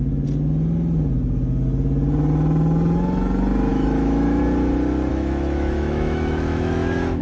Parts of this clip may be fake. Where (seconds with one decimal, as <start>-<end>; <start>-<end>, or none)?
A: 3.7-4.4; 5.1-7.2